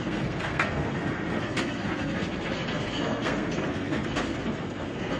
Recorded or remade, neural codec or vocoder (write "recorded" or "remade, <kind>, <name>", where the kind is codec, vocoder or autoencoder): remade, codec, SNAC